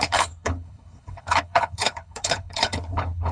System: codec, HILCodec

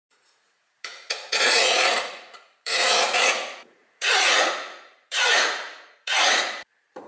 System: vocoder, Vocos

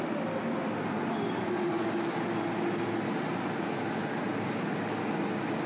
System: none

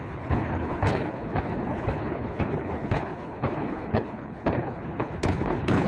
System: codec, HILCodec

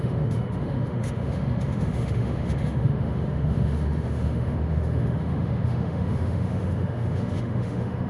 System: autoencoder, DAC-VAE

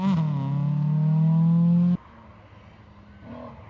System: none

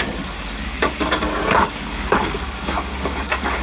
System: codec, DAC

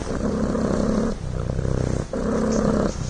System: none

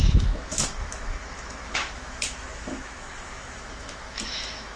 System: autoencoder, DAC-VAE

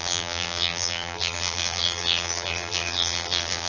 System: vocoder, BigVGAN v2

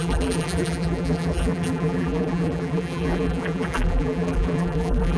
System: vocoder, BigVGAN v2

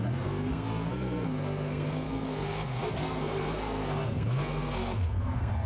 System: codec, SNAC